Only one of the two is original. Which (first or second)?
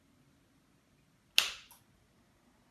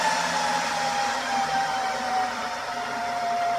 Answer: first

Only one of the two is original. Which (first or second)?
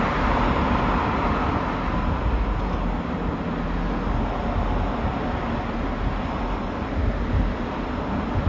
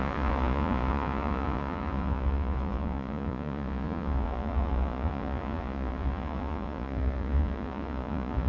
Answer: first